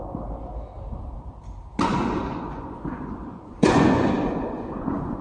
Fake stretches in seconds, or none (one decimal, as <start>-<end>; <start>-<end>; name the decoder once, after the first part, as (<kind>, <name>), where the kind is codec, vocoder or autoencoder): 1.9-5.2 (vocoder, Vocos)